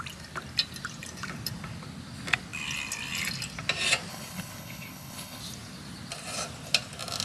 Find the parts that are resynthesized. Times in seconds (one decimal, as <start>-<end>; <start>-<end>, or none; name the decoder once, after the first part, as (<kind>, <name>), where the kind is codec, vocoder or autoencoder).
4.1-5.4 (codec, HILCodec)